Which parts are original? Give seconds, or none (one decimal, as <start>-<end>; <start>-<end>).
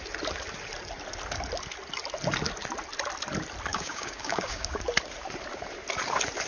0.0-3.7; 4.8-6.5